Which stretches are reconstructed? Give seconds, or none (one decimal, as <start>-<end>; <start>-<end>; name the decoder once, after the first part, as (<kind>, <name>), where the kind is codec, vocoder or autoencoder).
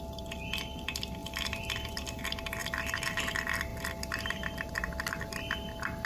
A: 1.2-2.2 (vocoder, BigVGAN v2); 2.6-3.3; 3.7-4.7